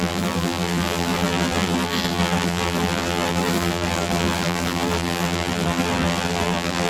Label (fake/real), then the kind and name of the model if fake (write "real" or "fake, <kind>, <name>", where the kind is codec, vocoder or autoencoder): fake, vocoder, BigVGAN v2